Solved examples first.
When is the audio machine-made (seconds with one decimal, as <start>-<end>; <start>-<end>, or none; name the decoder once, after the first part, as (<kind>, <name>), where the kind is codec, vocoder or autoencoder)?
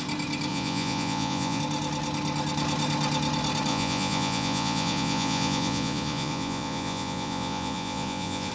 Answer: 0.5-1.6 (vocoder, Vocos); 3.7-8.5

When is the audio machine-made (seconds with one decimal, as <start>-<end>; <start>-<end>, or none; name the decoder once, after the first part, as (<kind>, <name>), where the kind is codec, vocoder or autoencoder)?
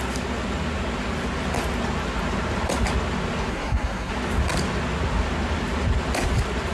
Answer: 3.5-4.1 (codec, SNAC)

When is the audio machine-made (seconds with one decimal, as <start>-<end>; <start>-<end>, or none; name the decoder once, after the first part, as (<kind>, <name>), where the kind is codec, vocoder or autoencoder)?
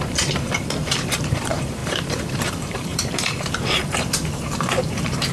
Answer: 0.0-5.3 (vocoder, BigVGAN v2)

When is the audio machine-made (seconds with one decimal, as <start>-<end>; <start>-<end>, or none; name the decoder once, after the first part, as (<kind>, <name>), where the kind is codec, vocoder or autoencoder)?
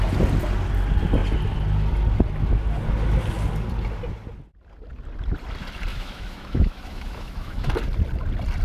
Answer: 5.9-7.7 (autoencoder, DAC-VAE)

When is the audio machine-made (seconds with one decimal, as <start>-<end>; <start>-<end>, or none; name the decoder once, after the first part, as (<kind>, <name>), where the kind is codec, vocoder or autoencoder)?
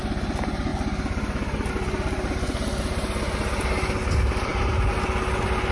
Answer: none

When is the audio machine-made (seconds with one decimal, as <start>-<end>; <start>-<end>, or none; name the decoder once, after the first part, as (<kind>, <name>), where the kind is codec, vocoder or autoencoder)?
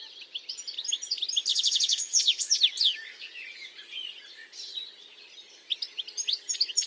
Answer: 1.5-2.5 (vocoder, Vocos)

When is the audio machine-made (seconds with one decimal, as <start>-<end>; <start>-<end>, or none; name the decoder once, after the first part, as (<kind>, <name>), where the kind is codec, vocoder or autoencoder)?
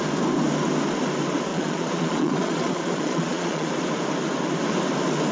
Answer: 1.5-3.7 (vocoder, Vocos)